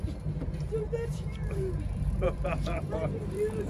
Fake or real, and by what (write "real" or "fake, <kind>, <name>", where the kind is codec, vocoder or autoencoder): fake, vocoder, BigVGAN v2